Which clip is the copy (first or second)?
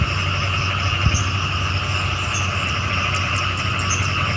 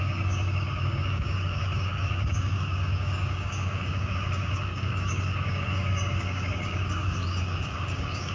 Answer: second